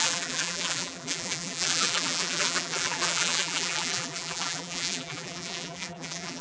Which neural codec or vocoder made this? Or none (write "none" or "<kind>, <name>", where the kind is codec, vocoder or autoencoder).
vocoder, BigVGAN v2